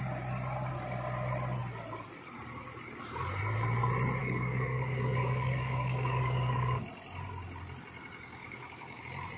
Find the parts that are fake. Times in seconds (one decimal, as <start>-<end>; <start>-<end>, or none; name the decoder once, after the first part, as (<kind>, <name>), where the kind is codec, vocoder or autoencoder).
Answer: 4.2-6.8 (codec, DAC); 8.4-9.0